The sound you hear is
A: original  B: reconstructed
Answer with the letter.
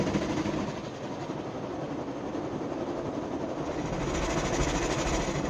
A